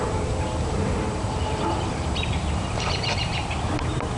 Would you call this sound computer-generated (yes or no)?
yes